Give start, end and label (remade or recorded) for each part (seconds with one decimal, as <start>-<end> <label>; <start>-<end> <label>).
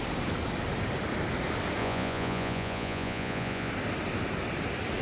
0.0-1.8 recorded; 1.8-3.7 remade; 3.7-5.0 recorded